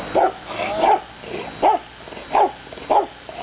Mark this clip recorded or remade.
recorded